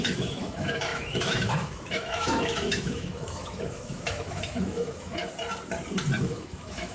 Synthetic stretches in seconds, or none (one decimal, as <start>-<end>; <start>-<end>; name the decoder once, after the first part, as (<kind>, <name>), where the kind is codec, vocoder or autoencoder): 0.0-5.2 (autoencoder, DAC-VAE); 6.2-6.9